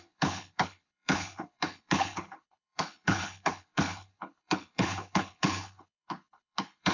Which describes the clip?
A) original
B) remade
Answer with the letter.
B